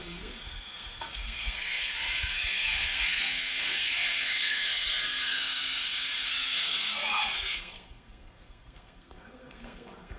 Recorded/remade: remade